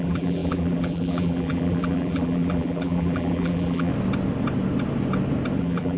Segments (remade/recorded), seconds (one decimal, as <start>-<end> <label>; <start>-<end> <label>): 0.0-3.9 remade; 3.9-5.6 recorded; 5.6-6.0 remade

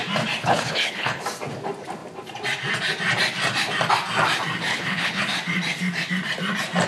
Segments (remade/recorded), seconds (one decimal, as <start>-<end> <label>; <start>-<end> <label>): 0.0-0.4 recorded; 0.4-1.2 remade; 1.2-4.7 recorded; 4.7-5.2 remade; 5.2-6.9 recorded

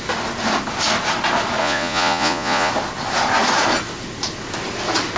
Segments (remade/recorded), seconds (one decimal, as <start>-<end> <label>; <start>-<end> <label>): 0.0-1.6 recorded; 1.6-2.7 remade; 2.7-5.2 recorded

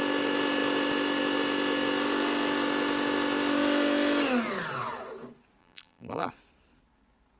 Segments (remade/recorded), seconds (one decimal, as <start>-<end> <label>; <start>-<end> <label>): 0.0-5.6 recorded; 5.6-6.3 remade; 6.3-7.4 recorded